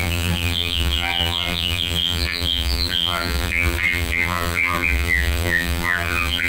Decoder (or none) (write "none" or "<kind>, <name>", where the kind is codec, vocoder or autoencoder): vocoder, BigVGAN v2